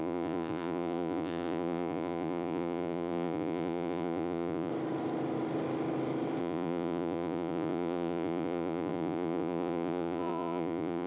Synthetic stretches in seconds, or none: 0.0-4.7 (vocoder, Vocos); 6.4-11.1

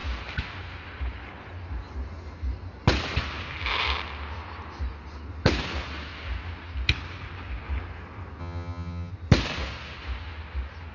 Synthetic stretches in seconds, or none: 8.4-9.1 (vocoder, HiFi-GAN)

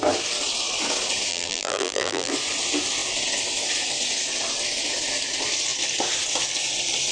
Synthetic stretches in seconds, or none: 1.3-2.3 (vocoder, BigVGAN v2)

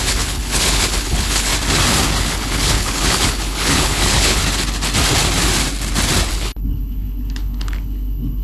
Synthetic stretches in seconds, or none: 0.0-1.5 (codec, HILCodec); 2.2-4.4; 6.3-8.4